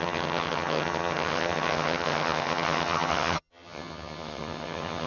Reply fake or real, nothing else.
fake